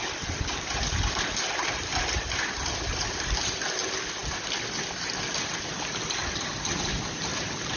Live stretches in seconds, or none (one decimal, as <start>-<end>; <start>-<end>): 0.0-7.8